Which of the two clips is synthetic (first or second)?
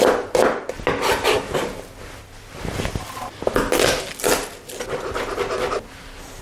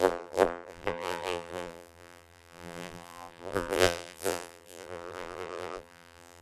second